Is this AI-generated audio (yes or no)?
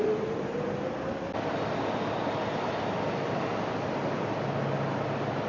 no